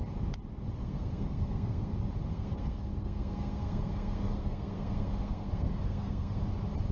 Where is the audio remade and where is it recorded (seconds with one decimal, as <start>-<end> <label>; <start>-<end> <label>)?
0.0-0.8 recorded; 0.8-1.9 remade; 1.9-2.3 recorded; 2.3-6.4 remade; 6.4-6.9 recorded